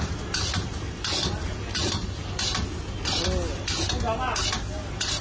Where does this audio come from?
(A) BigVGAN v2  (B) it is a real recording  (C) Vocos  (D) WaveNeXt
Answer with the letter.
B